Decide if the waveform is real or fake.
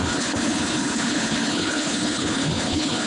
fake